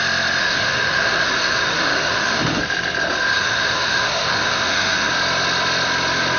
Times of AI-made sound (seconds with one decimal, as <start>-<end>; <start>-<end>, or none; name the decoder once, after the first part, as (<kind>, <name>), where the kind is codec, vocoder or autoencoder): 0.4-2.6 (autoencoder, DAC-VAE); 3.3-5.1